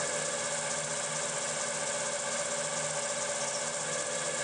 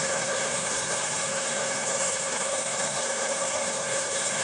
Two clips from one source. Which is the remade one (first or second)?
second